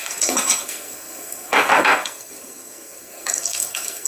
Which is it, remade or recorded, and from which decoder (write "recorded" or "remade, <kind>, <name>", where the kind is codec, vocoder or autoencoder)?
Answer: remade, codec, SNAC